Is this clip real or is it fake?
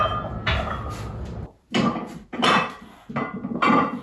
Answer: real